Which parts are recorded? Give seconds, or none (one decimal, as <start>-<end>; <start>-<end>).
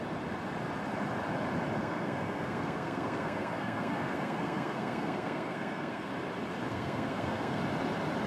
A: 0.0-1.8; 6.1-6.7; 7.6-8.3